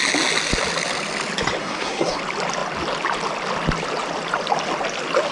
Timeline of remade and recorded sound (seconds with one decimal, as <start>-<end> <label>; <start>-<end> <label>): 0.0-1.6 recorded; 1.6-2.2 remade; 2.2-5.3 recorded

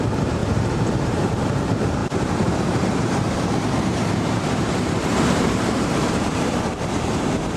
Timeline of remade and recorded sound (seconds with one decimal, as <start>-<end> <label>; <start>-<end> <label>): 0.0-7.6 remade